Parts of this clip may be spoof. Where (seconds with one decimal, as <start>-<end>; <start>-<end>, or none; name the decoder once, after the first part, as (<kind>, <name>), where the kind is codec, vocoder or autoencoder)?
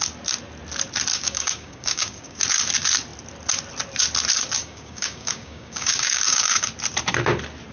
1.1-2.4 (codec, DAC); 4.6-6.7